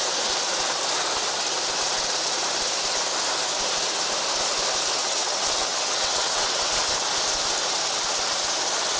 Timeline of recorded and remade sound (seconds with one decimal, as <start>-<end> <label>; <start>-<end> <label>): 0.0-5.0 recorded; 5.0-6.9 remade; 6.9-9.0 recorded